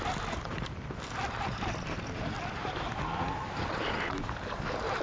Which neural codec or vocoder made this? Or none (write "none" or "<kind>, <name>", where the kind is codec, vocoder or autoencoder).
vocoder, BigVGAN v2